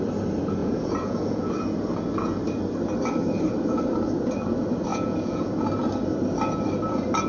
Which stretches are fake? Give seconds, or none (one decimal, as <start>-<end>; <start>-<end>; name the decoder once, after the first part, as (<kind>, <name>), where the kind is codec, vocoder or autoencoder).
0.6-1.5 (vocoder, Vocos); 4.9-5.5